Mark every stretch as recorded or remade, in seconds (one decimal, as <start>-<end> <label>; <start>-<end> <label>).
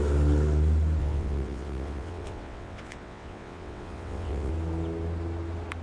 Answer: 0.0-1.0 recorded; 1.0-4.5 remade; 4.5-5.8 recorded